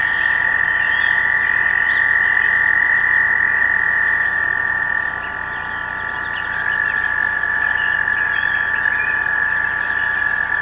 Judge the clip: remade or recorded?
recorded